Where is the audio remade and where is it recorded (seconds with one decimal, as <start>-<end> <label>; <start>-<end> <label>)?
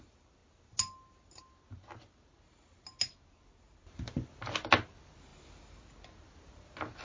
0.0-7.0 recorded